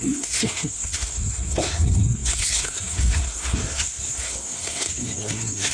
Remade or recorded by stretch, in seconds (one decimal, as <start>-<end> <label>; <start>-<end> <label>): 0.0-5.7 remade